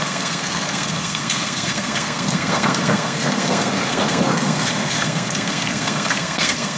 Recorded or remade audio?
remade